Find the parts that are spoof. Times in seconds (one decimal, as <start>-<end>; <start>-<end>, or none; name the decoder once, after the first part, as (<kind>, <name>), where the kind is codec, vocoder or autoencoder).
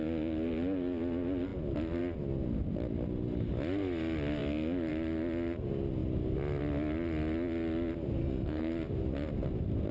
8.2-8.7 (codec, SNAC)